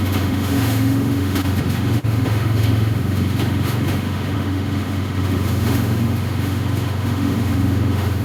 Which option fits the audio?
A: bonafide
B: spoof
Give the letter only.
B